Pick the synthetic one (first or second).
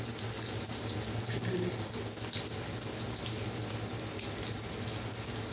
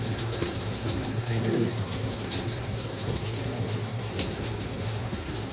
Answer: second